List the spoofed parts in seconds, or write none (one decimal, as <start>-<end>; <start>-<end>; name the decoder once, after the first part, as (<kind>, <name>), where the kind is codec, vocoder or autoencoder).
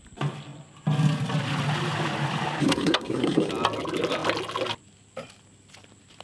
2.6-3.5 (codec, SNAC)